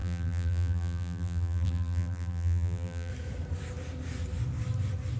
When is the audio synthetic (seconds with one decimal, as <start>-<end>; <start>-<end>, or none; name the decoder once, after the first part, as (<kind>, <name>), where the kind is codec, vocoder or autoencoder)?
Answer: 0.0-3.1 (vocoder, BigVGAN v2)